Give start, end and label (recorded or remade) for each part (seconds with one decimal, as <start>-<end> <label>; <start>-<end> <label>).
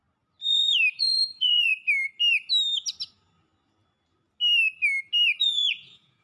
0.0-0.9 recorded; 0.9-1.7 remade; 1.7-5.4 recorded; 5.4-6.2 remade